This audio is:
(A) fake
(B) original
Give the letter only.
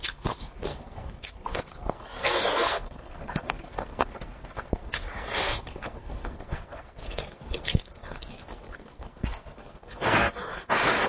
A